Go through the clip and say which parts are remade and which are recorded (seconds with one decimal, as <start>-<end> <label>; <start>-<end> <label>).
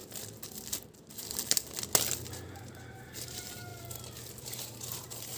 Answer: 0.0-2.6 recorded; 2.6-3.7 remade; 3.7-4.4 recorded; 4.4-5.4 remade